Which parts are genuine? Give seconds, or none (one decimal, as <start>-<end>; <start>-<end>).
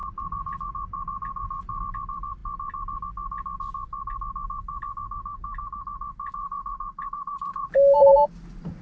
1.8-6.4; 8.1-8.8